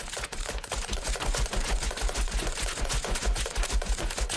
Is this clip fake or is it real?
fake